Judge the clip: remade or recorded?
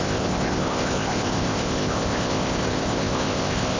remade